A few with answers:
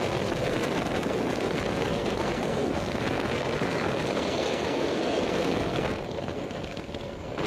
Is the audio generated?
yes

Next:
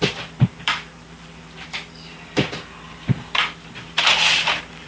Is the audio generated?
yes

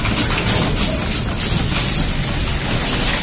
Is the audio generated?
no